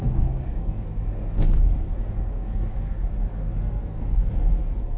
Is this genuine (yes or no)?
no